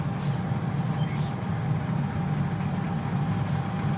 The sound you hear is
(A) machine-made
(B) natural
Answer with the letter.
B